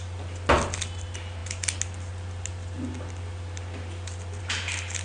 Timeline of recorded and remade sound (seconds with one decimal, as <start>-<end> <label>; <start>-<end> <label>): 0.0-5.0 recorded